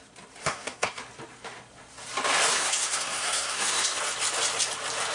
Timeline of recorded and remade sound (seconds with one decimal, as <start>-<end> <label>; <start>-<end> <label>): 0.0-0.4 recorded; 0.4-1.0 remade; 1.0-2.5 recorded; 2.5-4.0 remade; 4.0-5.1 recorded